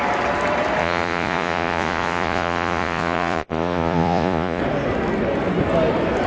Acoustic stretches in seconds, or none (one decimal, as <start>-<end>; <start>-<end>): 0.0-0.8; 4.6-6.3